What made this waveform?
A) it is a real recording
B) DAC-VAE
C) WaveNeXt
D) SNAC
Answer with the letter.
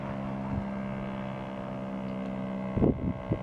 A